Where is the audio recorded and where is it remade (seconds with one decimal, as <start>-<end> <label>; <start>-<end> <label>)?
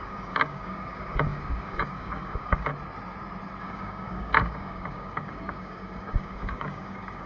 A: 0.0-2.7 remade; 2.7-3.6 recorded; 3.6-7.3 remade